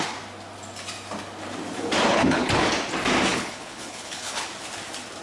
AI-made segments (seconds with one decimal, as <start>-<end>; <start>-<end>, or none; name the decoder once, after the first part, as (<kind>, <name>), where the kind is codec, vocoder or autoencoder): 2.1-2.7 (codec, HILCodec); 3.3-4.5

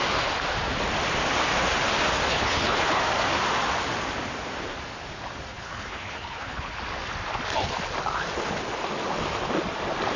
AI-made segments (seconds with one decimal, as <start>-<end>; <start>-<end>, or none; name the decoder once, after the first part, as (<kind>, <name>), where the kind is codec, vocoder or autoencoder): 2.3-3.0 (codec, HILCodec); 5.5-6.8

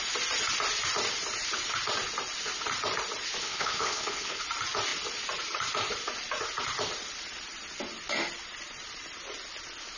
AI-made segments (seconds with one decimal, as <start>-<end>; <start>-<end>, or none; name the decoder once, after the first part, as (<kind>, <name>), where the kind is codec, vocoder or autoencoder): 3.4-4.4 (codec, HILCodec)

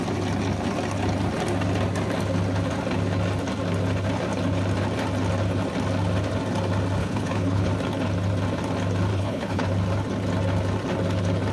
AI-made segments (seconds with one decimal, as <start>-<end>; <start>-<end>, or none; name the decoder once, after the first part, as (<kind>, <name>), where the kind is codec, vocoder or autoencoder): 7.0-7.7 (codec, HILCodec); 9.1-9.7

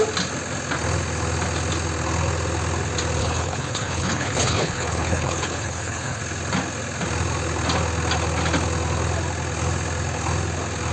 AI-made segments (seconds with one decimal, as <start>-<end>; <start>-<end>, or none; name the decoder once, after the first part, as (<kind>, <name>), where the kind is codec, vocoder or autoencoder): 3.2-6.2 (codec, HILCodec)

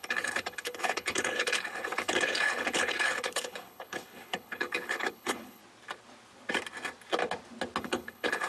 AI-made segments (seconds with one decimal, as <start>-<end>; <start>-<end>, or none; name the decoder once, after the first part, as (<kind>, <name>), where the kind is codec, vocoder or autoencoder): 0.0-5.6 (codec, HILCodec); 7.8-8.5

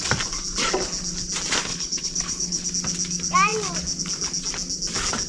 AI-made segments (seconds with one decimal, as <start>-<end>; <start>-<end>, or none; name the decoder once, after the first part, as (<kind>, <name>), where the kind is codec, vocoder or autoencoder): 1.6-2.7 (codec, HILCodec)

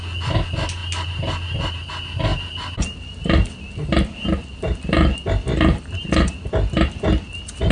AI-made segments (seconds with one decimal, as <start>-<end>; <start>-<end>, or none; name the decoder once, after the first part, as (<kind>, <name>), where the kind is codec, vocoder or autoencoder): none